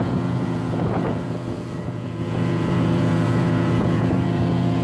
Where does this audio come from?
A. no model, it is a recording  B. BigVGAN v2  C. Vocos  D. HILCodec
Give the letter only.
C